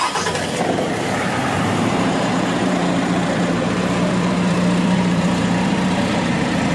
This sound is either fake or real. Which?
fake